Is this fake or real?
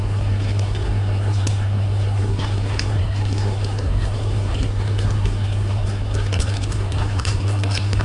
fake